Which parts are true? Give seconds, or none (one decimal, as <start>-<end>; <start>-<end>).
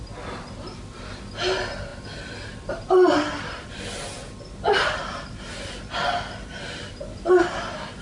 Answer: 0.0-8.0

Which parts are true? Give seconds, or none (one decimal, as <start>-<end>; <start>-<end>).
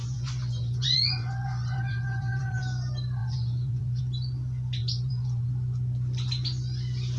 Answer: 2.6-3.2; 4.0-4.8; 5.5-7.2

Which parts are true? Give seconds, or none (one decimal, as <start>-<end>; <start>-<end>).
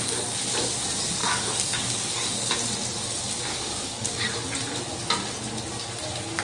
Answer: 0.0-1.2; 2.5-3.5; 4.3-6.4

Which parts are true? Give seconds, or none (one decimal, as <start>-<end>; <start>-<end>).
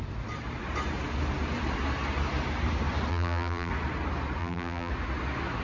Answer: 0.0-3.1; 3.7-4.4; 4.9-5.6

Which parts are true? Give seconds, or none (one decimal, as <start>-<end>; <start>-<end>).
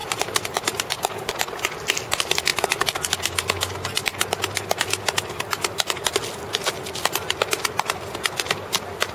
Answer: 1.3-9.1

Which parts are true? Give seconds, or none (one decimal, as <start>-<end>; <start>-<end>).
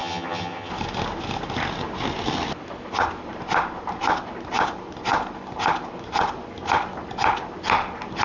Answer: 0.7-8.2